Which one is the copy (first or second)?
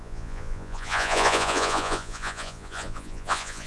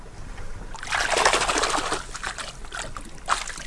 first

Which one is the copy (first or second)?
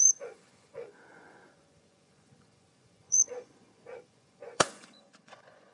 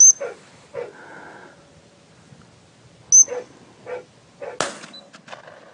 first